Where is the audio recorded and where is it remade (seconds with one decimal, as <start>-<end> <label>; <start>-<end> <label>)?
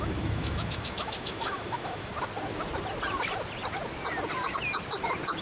0.0-2.1 remade; 2.1-5.4 recorded